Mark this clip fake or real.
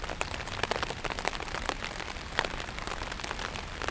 real